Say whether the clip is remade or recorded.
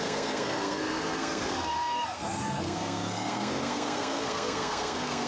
remade